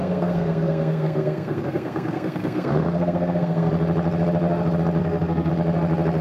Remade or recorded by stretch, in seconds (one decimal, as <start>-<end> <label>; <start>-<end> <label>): 0.0-3.7 remade; 3.7-5.0 recorded; 5.0-5.5 remade; 5.5-6.2 recorded